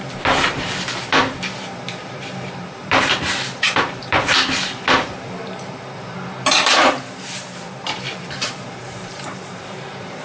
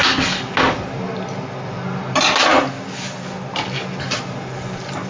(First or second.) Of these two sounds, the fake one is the first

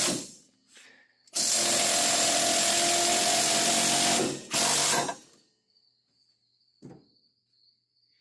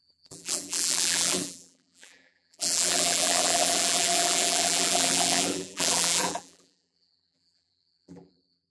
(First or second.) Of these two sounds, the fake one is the second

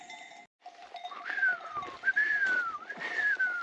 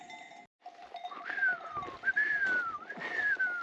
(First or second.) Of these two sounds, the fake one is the first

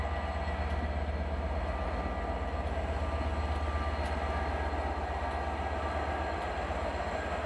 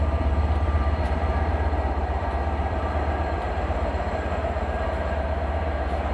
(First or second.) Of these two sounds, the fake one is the second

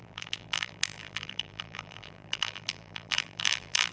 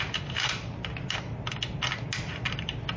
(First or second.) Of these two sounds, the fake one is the first